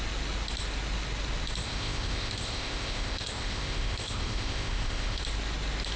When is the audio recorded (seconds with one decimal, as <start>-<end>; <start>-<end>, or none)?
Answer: 0.0-1.6; 5.2-6.0